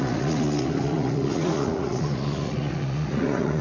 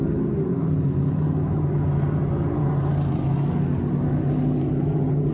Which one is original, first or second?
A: second